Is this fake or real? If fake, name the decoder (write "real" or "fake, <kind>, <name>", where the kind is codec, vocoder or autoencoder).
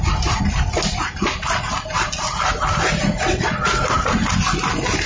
real